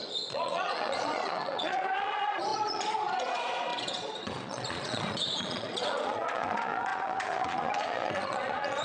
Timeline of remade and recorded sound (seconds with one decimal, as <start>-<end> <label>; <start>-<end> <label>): 0.0-8.8 remade

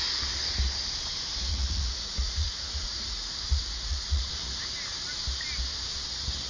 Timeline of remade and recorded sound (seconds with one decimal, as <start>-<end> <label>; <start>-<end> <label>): 0.0-1.5 recorded; 1.5-4.3 remade; 4.3-6.5 recorded